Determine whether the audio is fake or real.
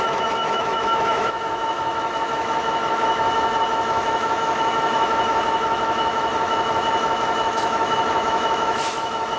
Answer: fake